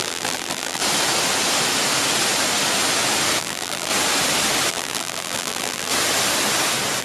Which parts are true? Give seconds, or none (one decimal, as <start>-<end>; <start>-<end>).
0.8-3.4; 3.9-4.7; 5.9-7.0